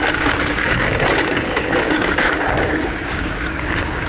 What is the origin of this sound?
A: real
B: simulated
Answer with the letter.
B